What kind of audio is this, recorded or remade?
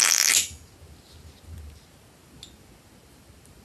recorded